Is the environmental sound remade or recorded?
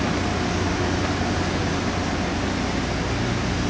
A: recorded